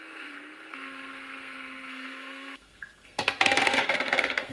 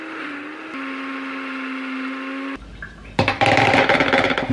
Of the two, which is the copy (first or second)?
first